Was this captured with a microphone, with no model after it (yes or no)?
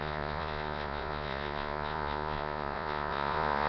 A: no